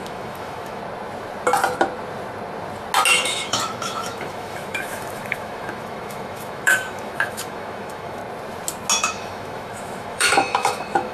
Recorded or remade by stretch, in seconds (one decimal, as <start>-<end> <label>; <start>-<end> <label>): 0.0-0.8 remade; 0.8-3.1 recorded; 3.1-8.2 remade; 8.2-9.0 recorded; 9.0-11.1 remade